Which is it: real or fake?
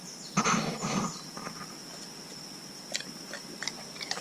real